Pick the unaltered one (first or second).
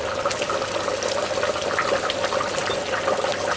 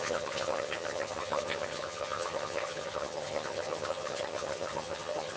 first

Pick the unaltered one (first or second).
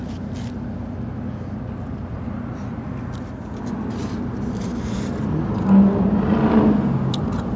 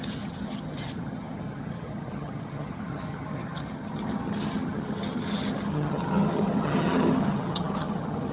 first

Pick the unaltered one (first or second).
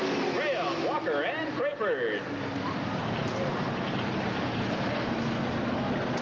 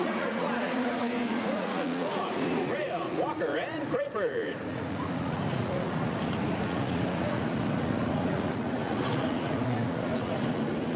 first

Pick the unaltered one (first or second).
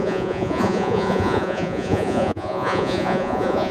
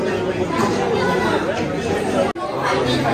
second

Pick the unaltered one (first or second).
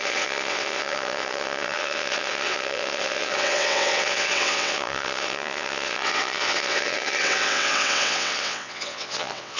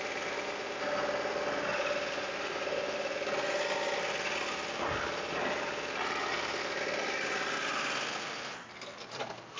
second